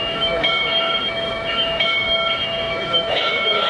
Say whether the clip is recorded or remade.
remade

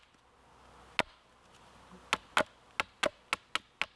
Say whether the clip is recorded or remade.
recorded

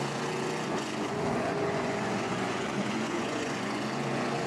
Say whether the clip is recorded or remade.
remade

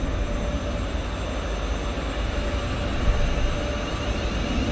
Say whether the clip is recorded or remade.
recorded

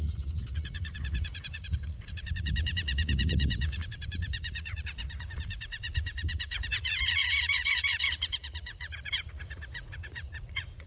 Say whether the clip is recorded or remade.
remade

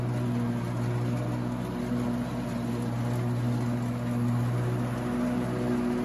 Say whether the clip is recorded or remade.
recorded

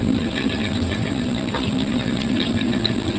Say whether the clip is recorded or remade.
remade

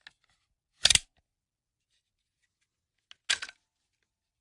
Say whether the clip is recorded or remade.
recorded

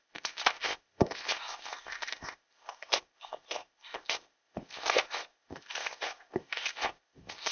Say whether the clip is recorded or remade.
remade